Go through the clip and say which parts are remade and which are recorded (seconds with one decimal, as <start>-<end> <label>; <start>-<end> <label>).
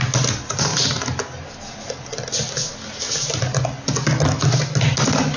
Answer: 0.0-5.4 recorded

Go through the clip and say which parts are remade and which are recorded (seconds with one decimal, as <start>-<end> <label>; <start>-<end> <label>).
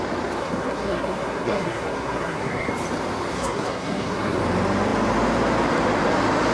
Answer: 0.0-0.4 recorded; 0.4-2.7 remade; 2.7-3.3 recorded; 3.3-4.4 remade; 4.4-6.5 recorded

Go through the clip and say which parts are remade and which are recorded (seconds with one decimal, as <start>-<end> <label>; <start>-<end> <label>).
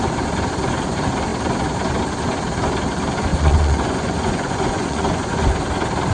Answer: 0.0-3.3 recorded; 3.3-5.5 remade; 5.5-6.1 recorded